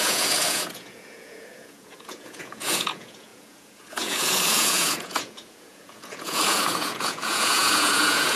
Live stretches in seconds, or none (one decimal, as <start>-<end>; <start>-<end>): none